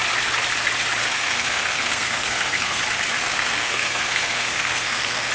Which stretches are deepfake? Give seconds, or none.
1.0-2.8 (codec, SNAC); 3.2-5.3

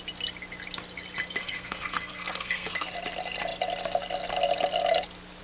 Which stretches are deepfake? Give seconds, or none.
1.4-2.9 (codec, SNAC)

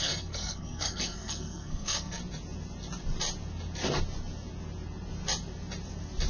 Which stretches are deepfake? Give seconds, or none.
0.0-2.2 (codec, SNAC)

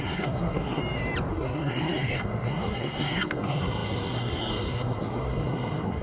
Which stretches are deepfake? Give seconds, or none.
0.0-0.8 (codec, SNAC); 1.3-6.0

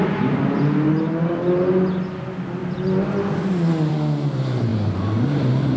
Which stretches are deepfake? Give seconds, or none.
none